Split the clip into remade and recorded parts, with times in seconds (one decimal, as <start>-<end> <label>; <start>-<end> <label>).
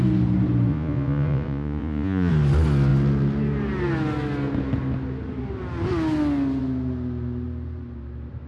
0.0-0.7 recorded; 0.7-2.3 remade; 2.3-8.5 recorded